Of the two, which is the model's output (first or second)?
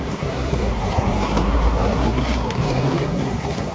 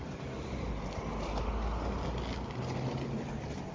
first